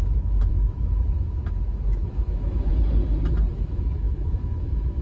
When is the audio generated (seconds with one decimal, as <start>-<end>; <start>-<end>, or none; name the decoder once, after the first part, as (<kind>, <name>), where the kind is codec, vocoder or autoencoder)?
0.0-2.7 (autoencoder, DAC-VAE); 3.5-5.0